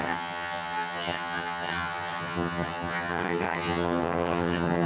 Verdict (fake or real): fake